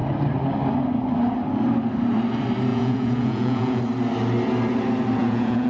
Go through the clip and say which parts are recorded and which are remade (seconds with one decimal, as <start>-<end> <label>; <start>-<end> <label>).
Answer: 0.0-2.7 recorded; 2.7-3.8 remade; 3.8-5.2 recorded; 5.2-5.7 remade